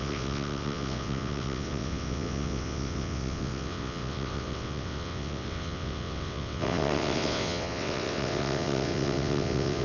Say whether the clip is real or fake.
fake